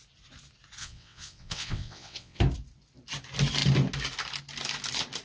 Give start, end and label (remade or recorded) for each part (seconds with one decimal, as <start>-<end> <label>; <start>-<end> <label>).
0.0-0.8 recorded; 0.8-2.4 remade; 2.4-5.2 recorded